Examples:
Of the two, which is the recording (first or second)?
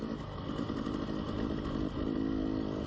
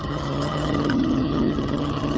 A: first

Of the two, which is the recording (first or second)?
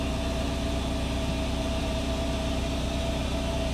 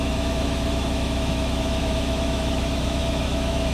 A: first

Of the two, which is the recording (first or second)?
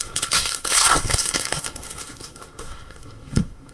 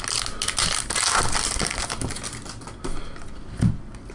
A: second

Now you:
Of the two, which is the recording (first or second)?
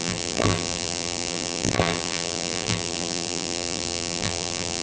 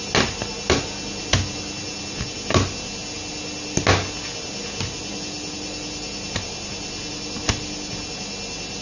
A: second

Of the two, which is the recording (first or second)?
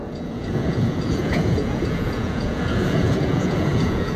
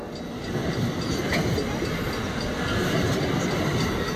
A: second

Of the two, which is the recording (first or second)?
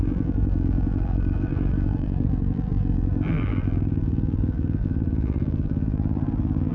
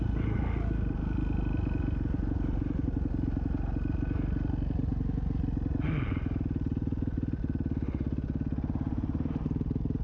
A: second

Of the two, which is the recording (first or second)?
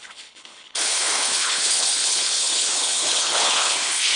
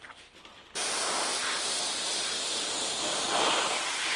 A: second